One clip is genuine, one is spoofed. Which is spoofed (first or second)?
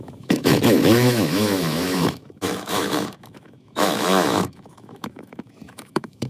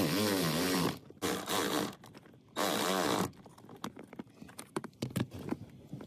first